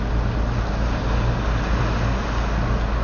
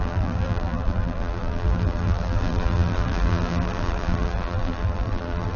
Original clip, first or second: first